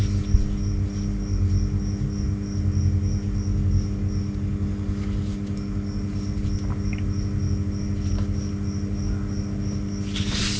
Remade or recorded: recorded